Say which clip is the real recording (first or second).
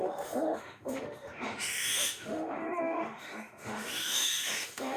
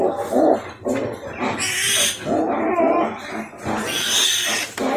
second